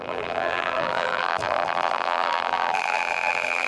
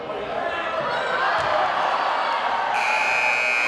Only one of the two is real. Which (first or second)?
second